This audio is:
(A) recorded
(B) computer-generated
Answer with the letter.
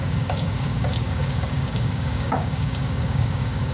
B